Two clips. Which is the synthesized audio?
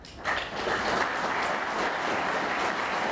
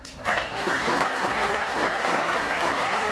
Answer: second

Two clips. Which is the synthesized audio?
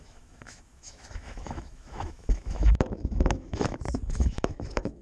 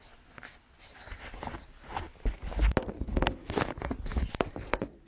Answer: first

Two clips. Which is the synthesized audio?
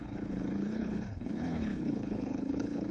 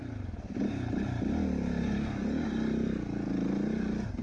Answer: first